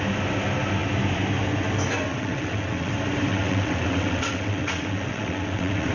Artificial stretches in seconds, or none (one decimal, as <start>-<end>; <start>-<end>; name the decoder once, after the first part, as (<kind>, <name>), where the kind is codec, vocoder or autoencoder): 2.1-2.9 (vocoder, WaveNeXt); 3.3-5.9